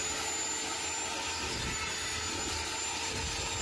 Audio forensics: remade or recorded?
recorded